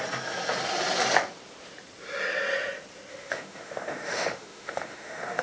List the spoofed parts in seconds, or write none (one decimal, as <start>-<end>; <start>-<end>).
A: 3.1-5.4